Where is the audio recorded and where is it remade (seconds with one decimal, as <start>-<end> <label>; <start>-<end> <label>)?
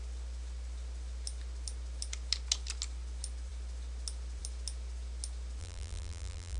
0.0-5.6 recorded; 5.6-6.6 remade